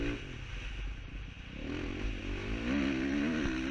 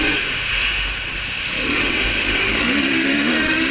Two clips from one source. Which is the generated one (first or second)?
second